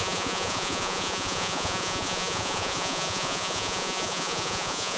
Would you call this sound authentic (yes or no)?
no